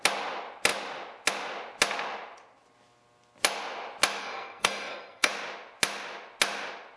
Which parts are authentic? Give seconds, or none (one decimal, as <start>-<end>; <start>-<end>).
0.0-4.2; 5.3-7.0